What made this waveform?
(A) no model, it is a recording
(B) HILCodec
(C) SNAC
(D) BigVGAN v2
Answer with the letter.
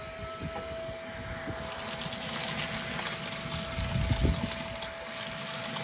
A